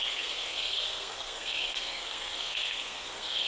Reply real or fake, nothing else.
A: fake